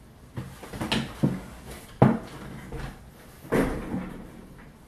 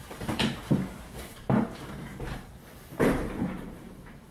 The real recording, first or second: first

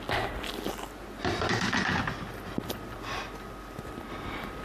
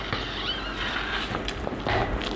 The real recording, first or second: first